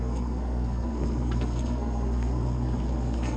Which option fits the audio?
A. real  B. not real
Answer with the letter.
B